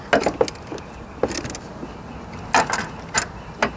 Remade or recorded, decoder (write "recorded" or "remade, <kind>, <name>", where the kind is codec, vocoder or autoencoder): recorded